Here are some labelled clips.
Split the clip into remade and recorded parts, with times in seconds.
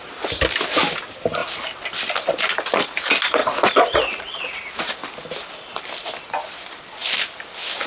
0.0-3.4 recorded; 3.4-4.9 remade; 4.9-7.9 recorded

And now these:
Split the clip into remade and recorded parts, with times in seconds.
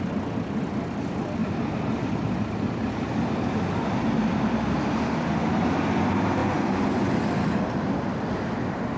0.0-6.4 recorded; 6.4-7.1 remade; 7.1-9.0 recorded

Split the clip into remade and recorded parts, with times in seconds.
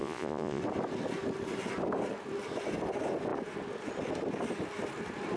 0.0-0.6 remade; 0.6-5.4 recorded